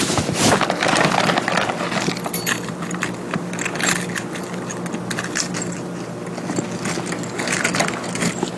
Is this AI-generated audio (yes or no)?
no